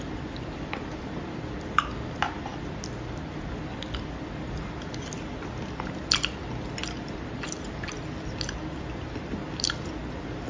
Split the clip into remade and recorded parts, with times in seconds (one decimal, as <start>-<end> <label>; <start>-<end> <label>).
0.0-10.5 recorded